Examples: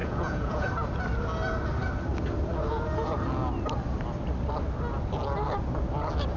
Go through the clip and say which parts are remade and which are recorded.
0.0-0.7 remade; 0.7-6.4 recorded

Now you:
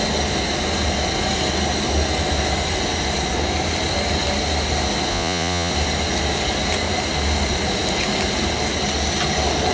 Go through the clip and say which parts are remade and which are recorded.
0.0-5.1 recorded; 5.1-5.7 remade; 5.7-9.7 recorded

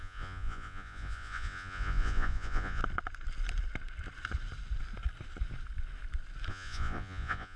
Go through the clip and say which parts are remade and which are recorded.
0.0-2.8 remade; 2.8-6.5 recorded; 6.5-7.6 remade